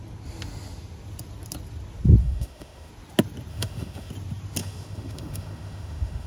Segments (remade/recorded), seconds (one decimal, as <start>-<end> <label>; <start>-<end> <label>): 0.0-2.2 recorded; 2.2-2.9 remade; 2.9-3.5 recorded; 3.5-4.1 remade; 4.1-4.6 recorded; 4.6-6.3 remade